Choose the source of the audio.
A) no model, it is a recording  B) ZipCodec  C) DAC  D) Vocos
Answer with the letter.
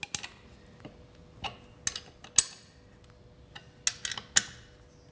A